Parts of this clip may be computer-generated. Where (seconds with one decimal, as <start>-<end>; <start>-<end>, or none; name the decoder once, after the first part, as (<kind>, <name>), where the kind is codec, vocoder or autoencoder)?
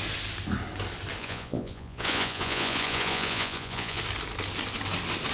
1.2-4.0 (vocoder, Vocos)